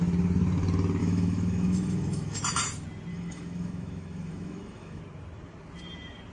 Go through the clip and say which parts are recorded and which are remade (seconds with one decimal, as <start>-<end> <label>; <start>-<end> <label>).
0.0-1.0 recorded; 1.0-2.4 remade; 2.4-3.1 recorded; 3.1-5.0 remade; 5.0-6.3 recorded